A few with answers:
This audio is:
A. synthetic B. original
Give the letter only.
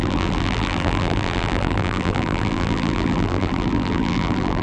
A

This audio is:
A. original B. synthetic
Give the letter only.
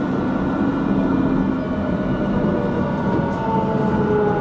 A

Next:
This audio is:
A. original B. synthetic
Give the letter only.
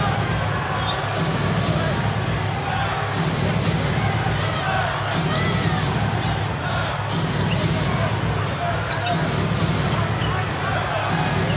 A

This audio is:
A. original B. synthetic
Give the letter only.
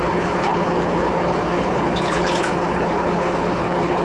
B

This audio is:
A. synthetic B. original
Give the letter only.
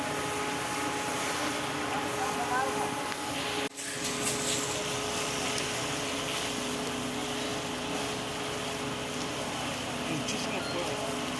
B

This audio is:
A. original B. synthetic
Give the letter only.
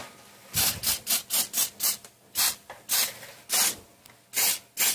A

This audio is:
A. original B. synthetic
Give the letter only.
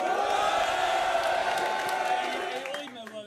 A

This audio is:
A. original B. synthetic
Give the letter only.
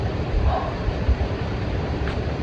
B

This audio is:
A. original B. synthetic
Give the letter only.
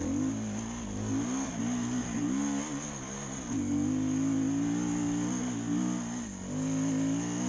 A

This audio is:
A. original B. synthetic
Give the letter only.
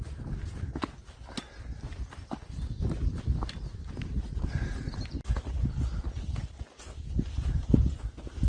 A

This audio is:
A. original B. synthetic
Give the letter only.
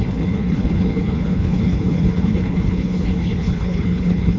B